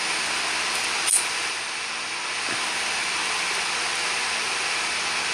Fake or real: real